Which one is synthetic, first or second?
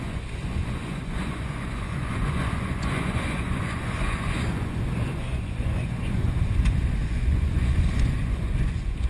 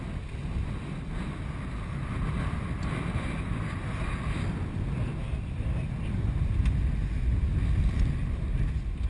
first